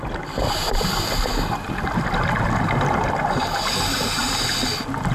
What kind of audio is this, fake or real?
real